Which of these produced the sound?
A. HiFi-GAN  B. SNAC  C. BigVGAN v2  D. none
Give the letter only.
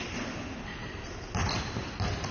D